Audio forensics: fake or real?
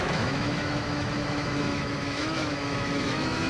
fake